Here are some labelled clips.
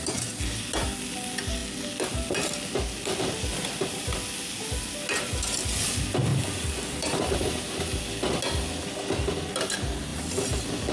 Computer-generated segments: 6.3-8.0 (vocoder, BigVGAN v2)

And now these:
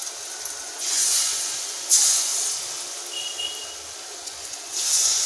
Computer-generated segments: 0.6-2.3 (vocoder, Vocos); 4.1-5.3

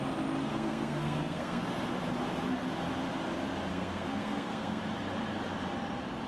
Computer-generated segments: 0.5-1.6 (codec, SNAC); 3.7-4.8

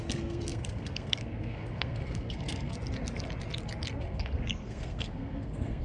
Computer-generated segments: 0.0-2.7 (codec, SNAC); 4.0-5.8

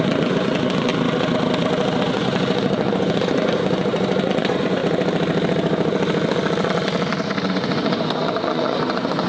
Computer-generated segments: 0.0-0.9 (vocoder, Vocos); 2.0-4.8; 7.5-9.3

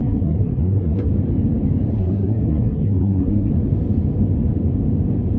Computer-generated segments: 0.0-1.1 (codec, SNAC); 1.9-3.5

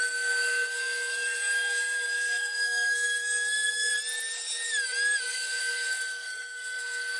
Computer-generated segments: 0.0-3.9 (codec, SNAC); 5.3-7.2

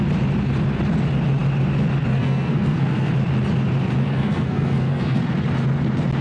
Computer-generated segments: 2.1-3.1 (codec, SNAC); 4.0-5.2